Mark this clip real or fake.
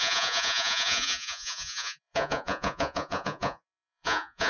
fake